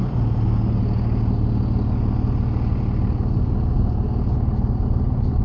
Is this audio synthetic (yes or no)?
no